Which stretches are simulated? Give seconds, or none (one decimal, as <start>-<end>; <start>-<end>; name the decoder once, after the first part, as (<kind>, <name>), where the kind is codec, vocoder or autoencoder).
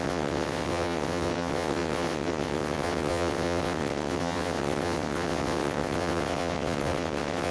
0.0-7.5 (vocoder, WaveNeXt)